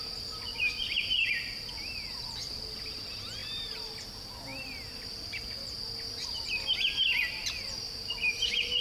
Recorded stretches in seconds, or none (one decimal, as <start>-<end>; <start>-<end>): 0.0-8.8